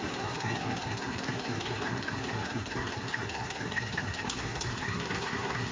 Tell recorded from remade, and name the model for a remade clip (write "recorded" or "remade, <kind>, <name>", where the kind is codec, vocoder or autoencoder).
remade, codec, SNAC